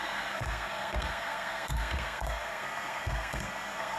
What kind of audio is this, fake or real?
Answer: fake